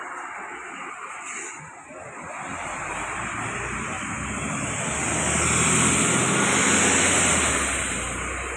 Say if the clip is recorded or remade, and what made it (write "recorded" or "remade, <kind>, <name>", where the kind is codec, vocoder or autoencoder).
recorded